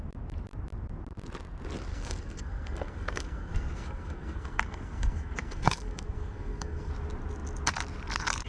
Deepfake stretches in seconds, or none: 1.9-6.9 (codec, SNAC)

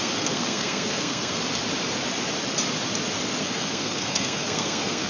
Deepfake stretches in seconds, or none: 0.0-1.4 (codec, SNAC); 3.4-5.1

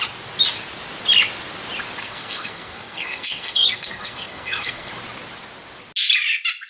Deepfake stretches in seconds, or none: 2.0-4.9 (codec, SNAC)

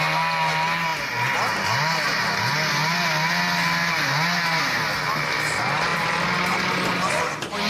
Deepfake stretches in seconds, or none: none

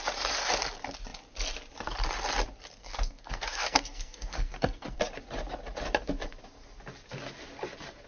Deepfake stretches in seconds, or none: 2.8-5.0 (codec, SNAC)